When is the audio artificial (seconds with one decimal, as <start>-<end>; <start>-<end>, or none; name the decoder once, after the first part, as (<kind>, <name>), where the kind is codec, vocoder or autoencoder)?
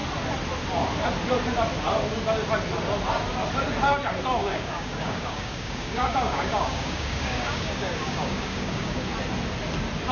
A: 4.4-9.0 (codec, DAC)